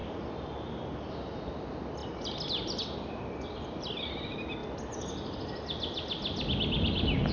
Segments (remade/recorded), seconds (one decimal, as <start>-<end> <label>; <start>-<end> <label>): 0.0-7.3 recorded